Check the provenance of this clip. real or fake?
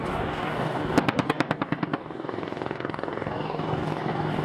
fake